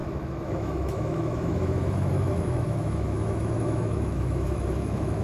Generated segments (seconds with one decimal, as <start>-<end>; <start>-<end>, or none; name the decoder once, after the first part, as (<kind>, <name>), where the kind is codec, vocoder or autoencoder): 0.0-5.2 (autoencoder, DAC-VAE)